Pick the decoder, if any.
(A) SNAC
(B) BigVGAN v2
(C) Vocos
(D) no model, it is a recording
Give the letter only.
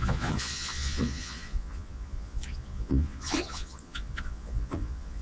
C